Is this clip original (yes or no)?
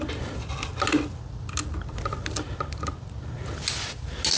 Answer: yes